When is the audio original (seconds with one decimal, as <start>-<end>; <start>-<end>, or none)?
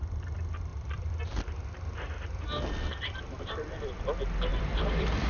0.0-0.7; 1.2-4.5